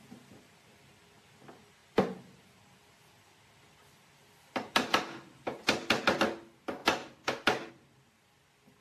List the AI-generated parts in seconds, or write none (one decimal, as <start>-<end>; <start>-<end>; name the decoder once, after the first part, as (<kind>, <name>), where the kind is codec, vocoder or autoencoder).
none